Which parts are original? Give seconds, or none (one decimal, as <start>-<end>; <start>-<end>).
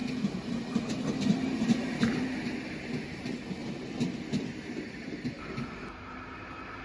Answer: 0.0-6.8